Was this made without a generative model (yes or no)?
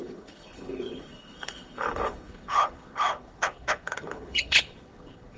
no